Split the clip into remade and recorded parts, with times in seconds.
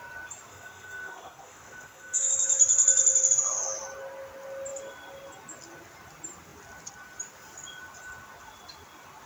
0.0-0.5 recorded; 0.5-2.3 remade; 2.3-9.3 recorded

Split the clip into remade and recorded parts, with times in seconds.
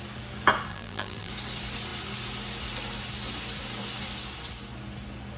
0.0-0.7 recorded; 0.7-1.3 remade; 1.3-5.4 recorded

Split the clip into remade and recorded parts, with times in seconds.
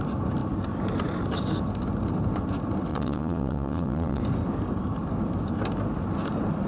0.0-2.9 recorded; 2.9-4.2 remade; 4.2-6.7 recorded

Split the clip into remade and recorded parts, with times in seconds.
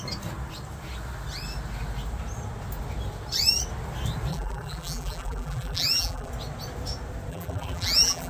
0.0-4.3 recorded; 4.3-6.3 remade; 6.3-7.3 recorded; 7.3-8.3 remade